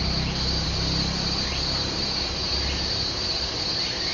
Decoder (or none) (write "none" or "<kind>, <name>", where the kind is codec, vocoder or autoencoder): vocoder, BigVGAN v2